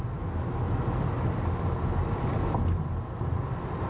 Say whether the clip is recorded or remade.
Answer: recorded